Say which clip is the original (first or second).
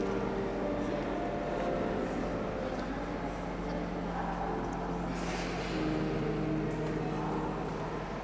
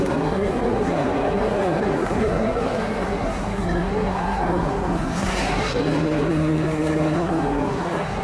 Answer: first